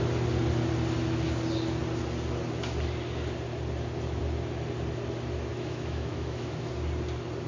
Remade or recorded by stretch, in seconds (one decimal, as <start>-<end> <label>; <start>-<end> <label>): 0.0-5.5 recorded; 5.5-6.7 remade; 6.7-7.5 recorded